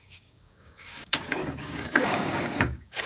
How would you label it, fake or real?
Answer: fake